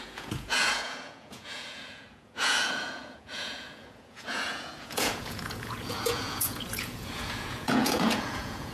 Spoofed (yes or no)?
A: yes